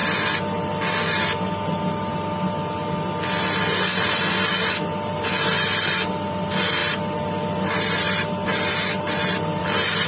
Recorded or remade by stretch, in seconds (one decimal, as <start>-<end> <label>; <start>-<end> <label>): 0.0-10.1 recorded